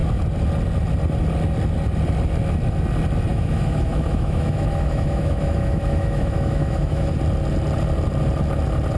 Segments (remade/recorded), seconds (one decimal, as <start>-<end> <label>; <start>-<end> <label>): 0.0-3.3 recorded; 3.3-7.1 remade; 7.1-9.0 recorded